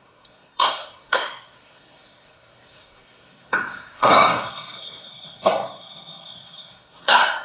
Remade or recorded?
remade